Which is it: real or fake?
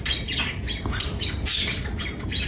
real